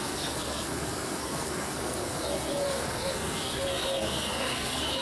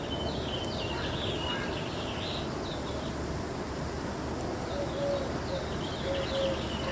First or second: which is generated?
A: first